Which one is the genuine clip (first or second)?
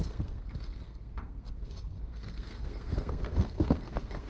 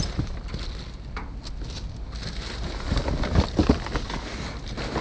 second